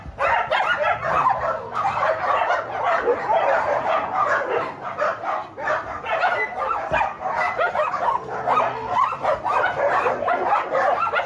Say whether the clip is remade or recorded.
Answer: recorded